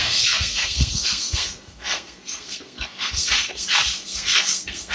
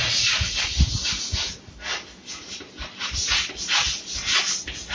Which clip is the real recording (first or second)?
second